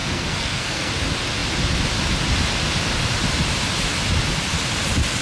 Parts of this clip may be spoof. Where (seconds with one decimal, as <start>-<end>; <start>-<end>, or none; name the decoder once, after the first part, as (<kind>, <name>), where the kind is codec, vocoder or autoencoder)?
0.0-0.9 (codec, SNAC)